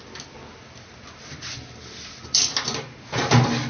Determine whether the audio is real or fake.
real